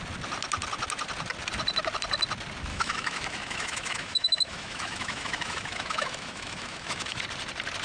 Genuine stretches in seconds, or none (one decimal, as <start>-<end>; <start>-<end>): 0.0-2.7; 7.2-7.8